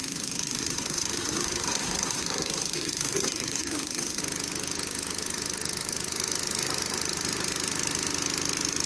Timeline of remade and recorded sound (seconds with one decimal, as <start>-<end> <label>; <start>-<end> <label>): 0.0-4.2 remade; 4.2-8.9 recorded